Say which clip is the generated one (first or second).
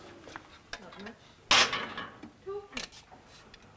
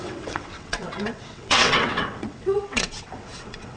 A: second